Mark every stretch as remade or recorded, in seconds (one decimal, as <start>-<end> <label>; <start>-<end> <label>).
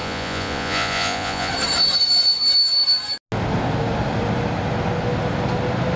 0.0-1.5 remade; 1.5-6.0 recorded